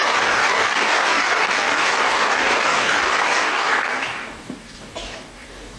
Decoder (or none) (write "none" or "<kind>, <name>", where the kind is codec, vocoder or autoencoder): codec, DAC